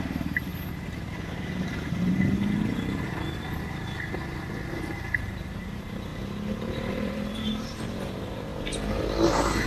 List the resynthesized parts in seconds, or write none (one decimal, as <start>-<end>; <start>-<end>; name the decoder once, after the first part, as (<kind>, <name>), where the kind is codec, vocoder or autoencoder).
0.0-0.5 (vocoder, BigVGAN v2); 4.7-6.1; 6.9-9.7

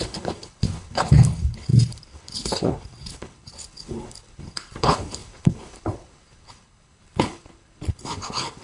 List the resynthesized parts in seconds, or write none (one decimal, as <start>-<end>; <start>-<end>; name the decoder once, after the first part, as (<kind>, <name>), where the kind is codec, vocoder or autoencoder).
0.0-8.6 (codec, HILCodec)

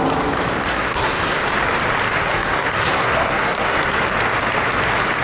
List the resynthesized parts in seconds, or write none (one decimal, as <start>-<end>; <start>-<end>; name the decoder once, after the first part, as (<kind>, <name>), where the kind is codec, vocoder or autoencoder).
0.7-1.4 (codec, SNAC); 2.2-4.0